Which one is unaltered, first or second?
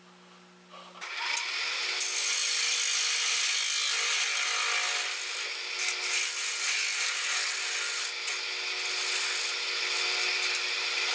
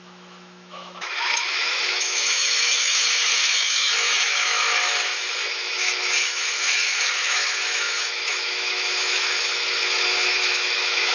first